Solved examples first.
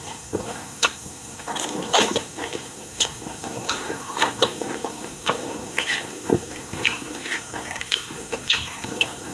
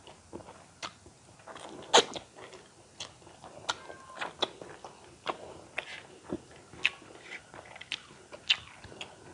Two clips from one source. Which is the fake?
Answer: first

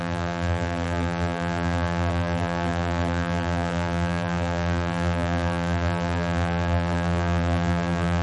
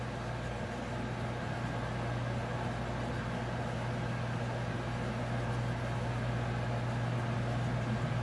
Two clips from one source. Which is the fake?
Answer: first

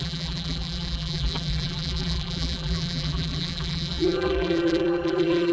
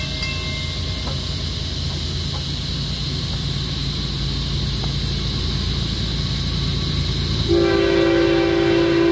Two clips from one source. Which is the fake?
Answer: first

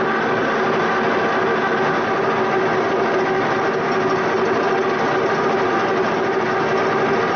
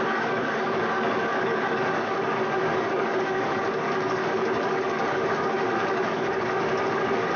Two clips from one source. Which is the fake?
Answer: second